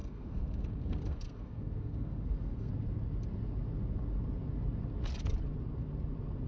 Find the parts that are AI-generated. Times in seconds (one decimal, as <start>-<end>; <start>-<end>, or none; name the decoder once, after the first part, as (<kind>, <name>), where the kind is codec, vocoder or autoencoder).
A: 0.0-2.7 (codec, SNAC)